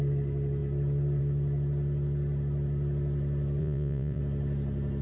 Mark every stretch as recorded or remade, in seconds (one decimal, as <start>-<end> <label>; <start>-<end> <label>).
0.0-3.6 recorded; 3.6-4.2 remade; 4.2-5.0 recorded